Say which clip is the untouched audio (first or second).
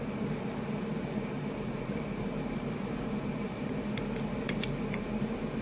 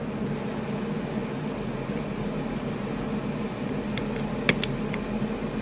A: second